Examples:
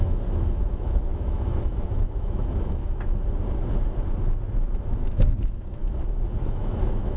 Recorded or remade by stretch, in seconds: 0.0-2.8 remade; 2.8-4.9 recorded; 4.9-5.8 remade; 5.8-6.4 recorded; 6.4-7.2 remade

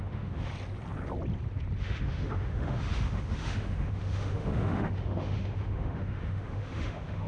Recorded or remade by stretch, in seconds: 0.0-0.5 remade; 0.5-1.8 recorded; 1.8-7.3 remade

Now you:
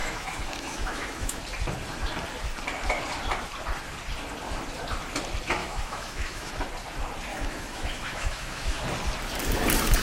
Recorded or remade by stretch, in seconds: 0.0-1.4 remade; 1.4-5.6 recorded; 5.6-6.5 remade; 6.5-7.3 recorded; 7.3-8.8 remade; 8.8-10.0 recorded

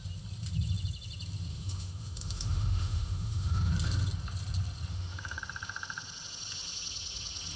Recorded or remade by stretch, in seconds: 0.0-1.5 recorded; 1.5-3.7 remade; 3.7-4.9 recorded; 4.9-5.4 remade; 5.4-7.6 recorded

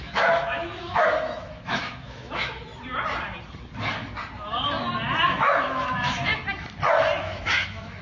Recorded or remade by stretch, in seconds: 0.0-2.7 remade; 2.7-5.3 recorded; 5.3-6.3 remade; 6.3-7.2 recorded; 7.2-8.0 remade

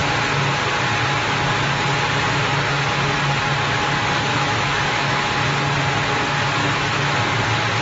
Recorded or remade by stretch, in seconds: 0.0-4.3 recorded; 4.3-5.3 remade; 5.3-6.6 recorded; 6.6-7.2 remade; 7.2-7.8 recorded

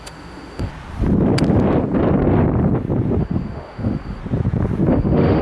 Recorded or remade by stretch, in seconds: 0.0-0.7 remade; 0.7-3.2 recorded; 3.2-4.2 remade; 4.2-4.9 recorded; 4.9-5.4 remade